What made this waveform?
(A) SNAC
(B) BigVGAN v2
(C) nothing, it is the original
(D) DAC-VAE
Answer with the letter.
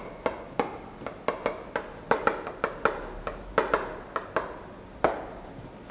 C